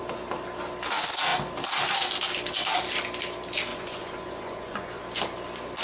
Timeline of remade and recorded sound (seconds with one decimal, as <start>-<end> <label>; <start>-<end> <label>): 0.0-3.7 recorded; 3.7-5.0 remade; 5.0-5.8 recorded